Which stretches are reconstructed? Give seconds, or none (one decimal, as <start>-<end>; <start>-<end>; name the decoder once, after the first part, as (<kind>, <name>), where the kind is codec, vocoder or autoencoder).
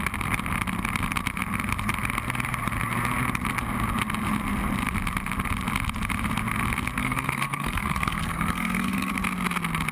7.0-9.1 (codec, SNAC)